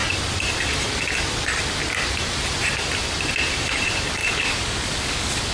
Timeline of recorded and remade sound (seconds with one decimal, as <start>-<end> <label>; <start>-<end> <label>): 0.0-4.2 recorded; 4.2-5.5 remade